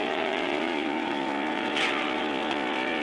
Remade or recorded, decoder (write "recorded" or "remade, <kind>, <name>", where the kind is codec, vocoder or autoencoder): remade, vocoder, Vocos